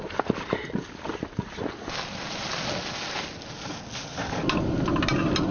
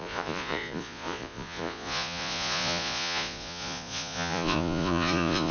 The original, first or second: first